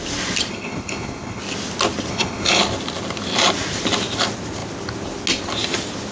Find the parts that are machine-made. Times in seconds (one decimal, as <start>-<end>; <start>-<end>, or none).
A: 0.5-1.4; 2.1-2.6